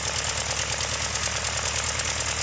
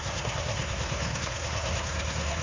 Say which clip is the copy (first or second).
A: second